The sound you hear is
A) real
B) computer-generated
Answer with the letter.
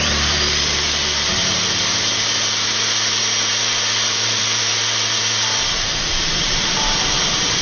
B